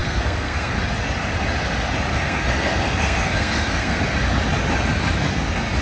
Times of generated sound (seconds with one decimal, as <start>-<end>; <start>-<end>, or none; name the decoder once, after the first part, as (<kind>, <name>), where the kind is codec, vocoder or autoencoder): 0.0-0.8 (codec, SNAC); 2.1-4.0